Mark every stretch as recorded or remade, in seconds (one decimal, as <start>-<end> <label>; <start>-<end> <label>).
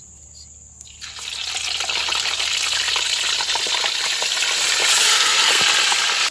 0.0-5.0 recorded; 5.0-5.6 remade; 5.6-6.3 recorded